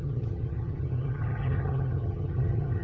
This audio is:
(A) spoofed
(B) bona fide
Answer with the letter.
A